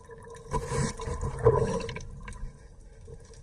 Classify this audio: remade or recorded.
recorded